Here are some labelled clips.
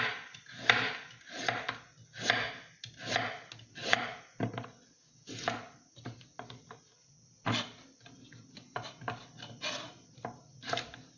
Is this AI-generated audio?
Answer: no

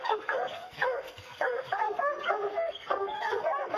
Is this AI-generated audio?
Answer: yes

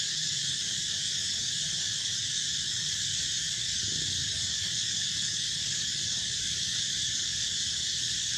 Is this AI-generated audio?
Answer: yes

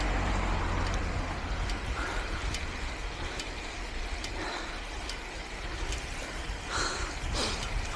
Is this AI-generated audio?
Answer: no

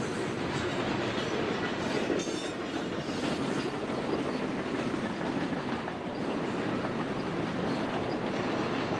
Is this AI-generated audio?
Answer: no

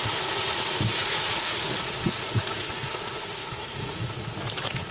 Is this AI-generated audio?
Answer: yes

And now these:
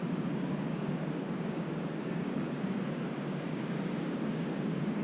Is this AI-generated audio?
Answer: yes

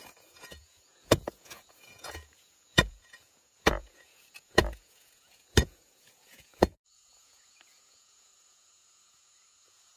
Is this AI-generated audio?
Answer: yes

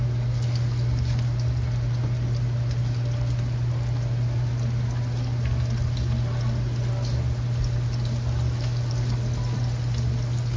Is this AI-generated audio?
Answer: no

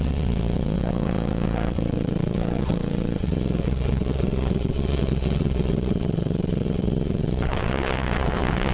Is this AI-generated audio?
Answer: yes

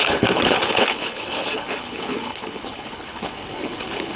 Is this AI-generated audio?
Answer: yes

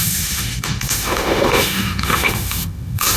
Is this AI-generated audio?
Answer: yes